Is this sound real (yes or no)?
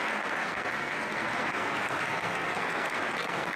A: no